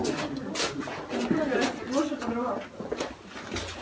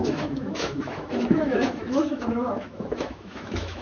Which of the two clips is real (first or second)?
first